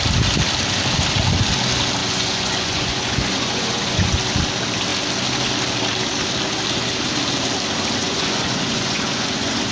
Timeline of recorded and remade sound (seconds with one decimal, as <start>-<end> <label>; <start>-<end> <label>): 0.0-2.0 recorded; 2.0-4.1 remade; 4.1-8.0 recorded; 8.0-9.7 remade